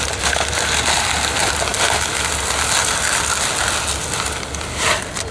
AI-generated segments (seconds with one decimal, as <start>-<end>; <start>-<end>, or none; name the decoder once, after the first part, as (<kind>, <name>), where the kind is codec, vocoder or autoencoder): none